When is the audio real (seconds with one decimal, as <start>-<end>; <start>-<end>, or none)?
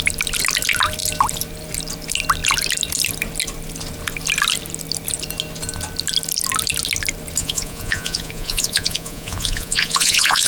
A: 0.0-7.4